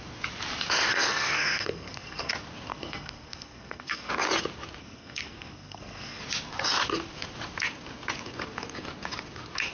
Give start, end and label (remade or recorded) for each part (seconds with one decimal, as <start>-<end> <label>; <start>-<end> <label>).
0.0-0.9 recorded; 0.9-2.3 remade; 2.3-2.7 recorded; 2.7-4.1 remade; 4.1-4.8 recorded; 4.8-6.2 remade; 6.2-9.7 recorded